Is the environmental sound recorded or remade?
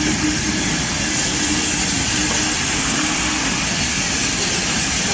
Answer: recorded